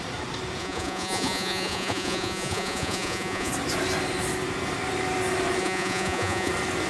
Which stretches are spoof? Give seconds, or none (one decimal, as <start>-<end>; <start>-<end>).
0.6-3.5; 5.6-6.5